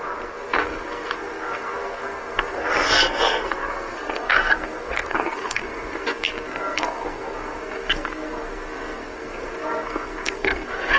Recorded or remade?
remade